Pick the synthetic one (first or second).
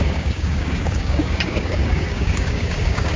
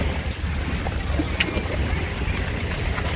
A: first